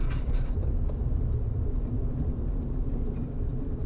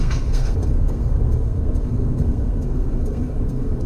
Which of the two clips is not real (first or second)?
second